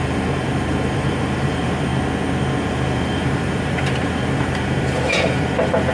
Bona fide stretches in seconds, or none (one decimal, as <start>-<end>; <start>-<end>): 1.9-2.6

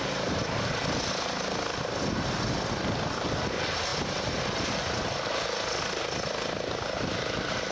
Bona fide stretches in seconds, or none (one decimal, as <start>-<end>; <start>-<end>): 0.0-7.7

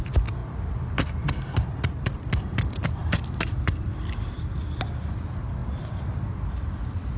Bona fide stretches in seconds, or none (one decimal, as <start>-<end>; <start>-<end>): 0.4-1.9